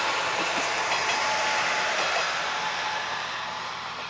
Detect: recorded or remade remade